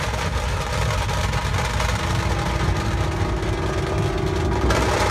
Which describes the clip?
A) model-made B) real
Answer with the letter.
B